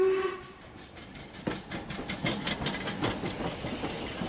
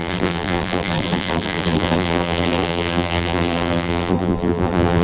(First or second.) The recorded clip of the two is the first